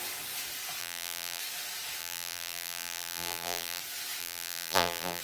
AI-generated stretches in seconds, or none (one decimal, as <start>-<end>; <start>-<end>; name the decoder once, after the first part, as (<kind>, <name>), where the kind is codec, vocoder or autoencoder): 0.8-1.4 (vocoder, BigVGAN v2); 2.0-3.8; 4.2-5.2